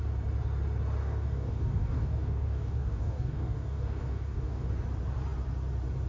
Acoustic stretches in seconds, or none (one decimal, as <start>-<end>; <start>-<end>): 0.0-1.0; 4.7-6.1